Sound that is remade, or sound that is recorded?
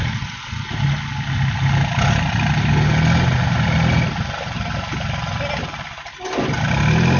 recorded